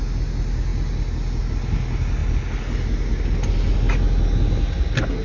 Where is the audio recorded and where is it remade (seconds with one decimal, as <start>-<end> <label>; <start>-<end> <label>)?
0.0-5.2 recorded